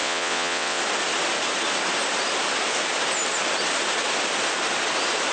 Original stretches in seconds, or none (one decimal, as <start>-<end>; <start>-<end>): 0.8-5.3